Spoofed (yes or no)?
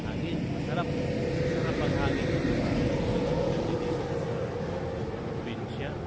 no